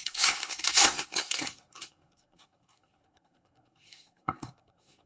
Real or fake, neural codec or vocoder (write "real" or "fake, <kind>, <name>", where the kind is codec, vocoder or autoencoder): fake, codec, SNAC